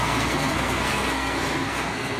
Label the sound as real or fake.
fake